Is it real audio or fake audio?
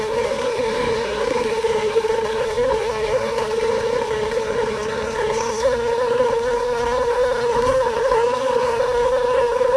fake